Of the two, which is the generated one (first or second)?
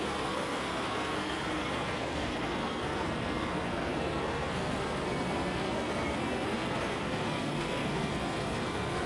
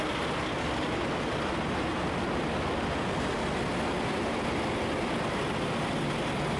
first